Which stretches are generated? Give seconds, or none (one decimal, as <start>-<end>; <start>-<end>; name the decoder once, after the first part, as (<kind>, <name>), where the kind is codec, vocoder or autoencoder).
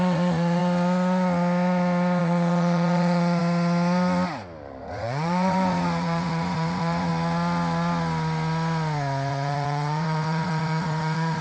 0.0-0.6 (vocoder, Vocos); 2.2-3.4; 4.8-7.1; 9.3-11.4